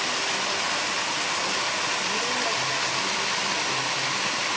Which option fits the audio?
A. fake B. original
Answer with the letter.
B